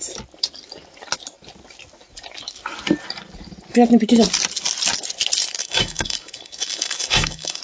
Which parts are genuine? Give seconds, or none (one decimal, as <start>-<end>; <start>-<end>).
0.0-5.6